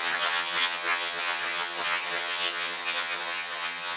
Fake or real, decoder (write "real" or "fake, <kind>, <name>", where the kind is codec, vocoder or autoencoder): fake, vocoder, HiFi-GAN